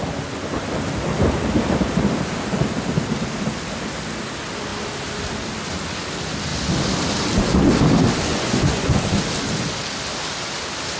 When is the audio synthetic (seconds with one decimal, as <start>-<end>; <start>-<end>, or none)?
8.3-9.0